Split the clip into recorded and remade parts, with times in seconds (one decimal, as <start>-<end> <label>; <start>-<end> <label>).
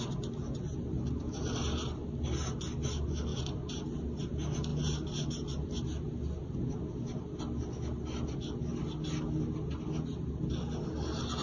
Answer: 0.0-11.4 recorded